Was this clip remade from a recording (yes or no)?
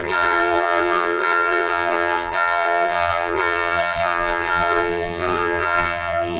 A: yes